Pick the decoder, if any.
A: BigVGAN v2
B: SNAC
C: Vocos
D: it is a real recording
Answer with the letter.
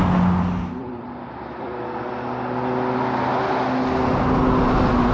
D